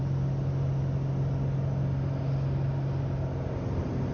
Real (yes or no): yes